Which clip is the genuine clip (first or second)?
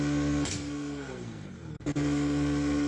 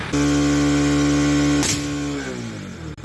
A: second